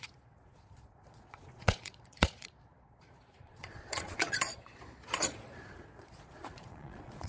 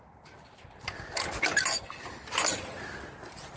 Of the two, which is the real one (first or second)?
second